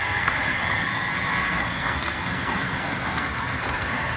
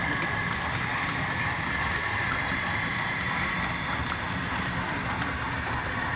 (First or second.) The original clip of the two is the second